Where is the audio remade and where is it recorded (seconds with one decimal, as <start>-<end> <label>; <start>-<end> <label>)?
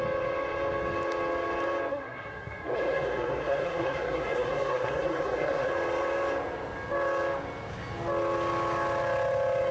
0.0-1.9 recorded; 1.9-5.7 remade; 5.7-9.7 recorded